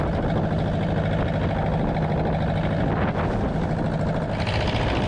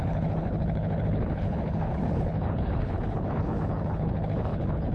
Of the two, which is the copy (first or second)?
second